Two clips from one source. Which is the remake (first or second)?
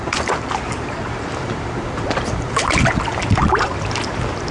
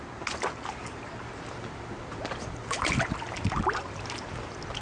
first